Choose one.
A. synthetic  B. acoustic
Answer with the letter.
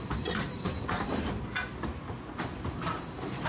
B